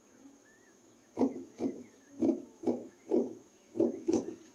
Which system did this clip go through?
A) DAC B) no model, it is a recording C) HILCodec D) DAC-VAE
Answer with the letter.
D